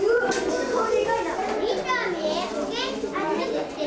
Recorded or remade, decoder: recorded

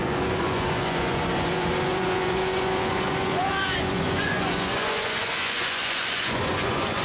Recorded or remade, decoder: remade, vocoder, Vocos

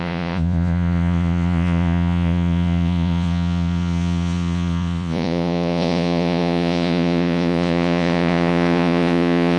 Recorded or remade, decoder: remade, vocoder, Vocos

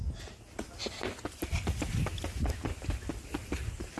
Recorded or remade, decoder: recorded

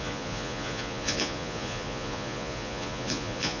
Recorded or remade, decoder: remade, vocoder, Vocos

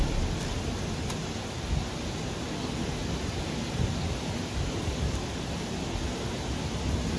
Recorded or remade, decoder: recorded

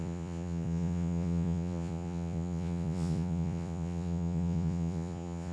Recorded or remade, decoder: remade, vocoder, Vocos